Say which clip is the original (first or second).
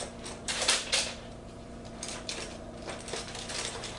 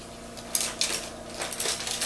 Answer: second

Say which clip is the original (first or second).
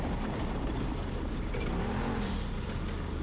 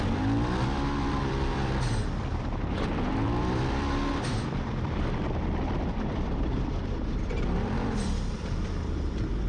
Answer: first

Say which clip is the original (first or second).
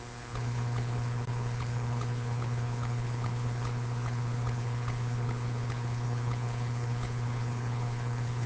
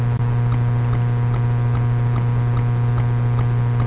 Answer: second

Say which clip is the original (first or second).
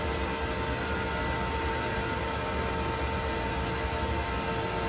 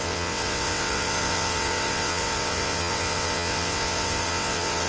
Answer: first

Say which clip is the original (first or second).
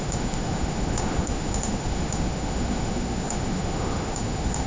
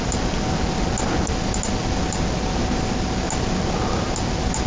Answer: second